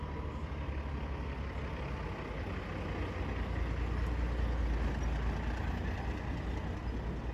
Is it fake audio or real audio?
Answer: real